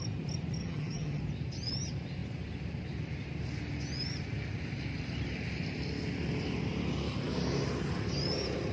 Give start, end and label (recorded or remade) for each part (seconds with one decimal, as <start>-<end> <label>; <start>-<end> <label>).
0.0-0.6 recorded; 0.6-1.2 remade; 1.2-8.7 recorded